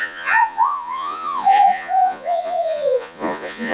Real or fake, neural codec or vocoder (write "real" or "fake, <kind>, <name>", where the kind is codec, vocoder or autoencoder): fake, vocoder, Vocos